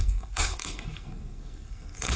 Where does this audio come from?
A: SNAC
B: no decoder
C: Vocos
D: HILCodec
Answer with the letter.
A